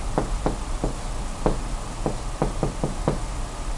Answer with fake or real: real